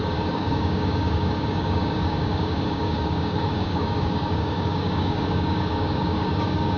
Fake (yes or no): yes